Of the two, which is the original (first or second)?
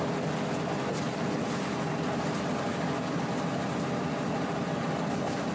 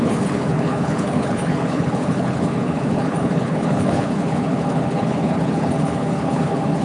first